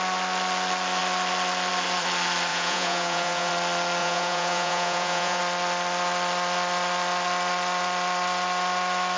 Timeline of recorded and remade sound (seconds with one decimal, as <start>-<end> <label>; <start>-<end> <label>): 0.0-2.5 recorded; 2.5-3.5 remade; 3.5-4.0 recorded; 4.0-5.4 remade; 5.4-9.2 recorded